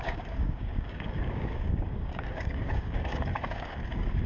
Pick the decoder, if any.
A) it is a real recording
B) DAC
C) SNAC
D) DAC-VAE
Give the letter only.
B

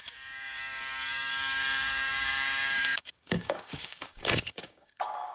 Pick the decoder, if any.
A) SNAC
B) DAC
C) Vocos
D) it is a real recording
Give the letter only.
B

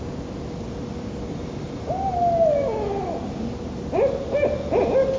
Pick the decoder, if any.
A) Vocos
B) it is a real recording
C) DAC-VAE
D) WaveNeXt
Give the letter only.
B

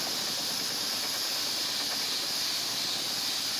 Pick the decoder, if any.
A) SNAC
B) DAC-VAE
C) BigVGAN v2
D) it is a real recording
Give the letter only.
D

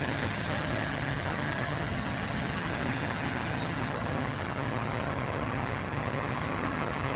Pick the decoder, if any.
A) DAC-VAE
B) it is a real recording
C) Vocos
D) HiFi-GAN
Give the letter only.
D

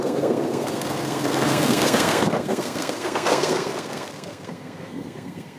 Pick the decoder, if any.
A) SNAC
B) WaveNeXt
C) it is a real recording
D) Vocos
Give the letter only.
A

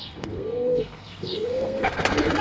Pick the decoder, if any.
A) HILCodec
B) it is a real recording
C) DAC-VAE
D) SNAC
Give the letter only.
D